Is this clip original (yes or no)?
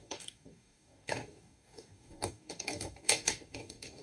no